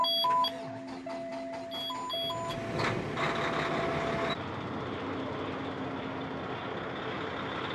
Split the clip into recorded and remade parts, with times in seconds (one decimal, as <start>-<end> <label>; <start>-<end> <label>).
0.0-7.7 recorded